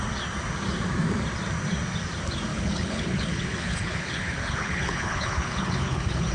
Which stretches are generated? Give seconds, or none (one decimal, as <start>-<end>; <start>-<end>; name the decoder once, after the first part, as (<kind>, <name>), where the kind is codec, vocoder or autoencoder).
2.5-6.3 (codec, HILCodec)